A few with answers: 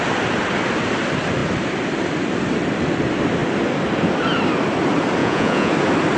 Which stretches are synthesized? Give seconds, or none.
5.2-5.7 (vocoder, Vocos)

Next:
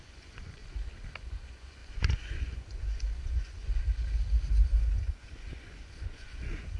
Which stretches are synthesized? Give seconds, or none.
0.0-0.6 (vocoder, Vocos); 1.2-3.8; 4.5-6.8

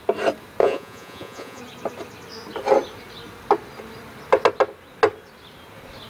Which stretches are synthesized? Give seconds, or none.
0.6-1.6 (vocoder, Vocos)

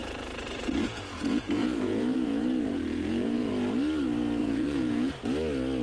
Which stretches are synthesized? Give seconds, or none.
0.0-3.5 (vocoder, Vocos); 4.4-5.1

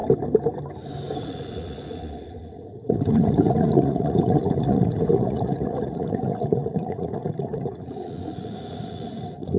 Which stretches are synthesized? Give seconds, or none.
1.2-9.6 (vocoder, Vocos)

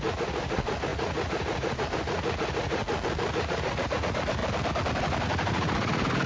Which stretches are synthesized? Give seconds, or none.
0.0-2.8 (vocoder, Vocos); 3.3-4.4; 5.0-6.3